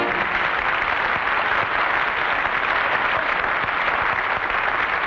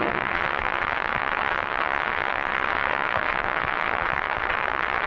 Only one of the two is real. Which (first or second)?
first